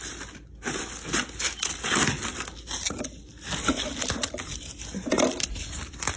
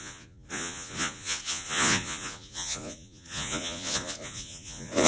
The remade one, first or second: second